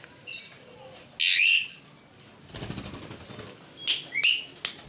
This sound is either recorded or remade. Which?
recorded